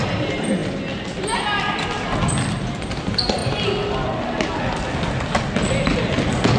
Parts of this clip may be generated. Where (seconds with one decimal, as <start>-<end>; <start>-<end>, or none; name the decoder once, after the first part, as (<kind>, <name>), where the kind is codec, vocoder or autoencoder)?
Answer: none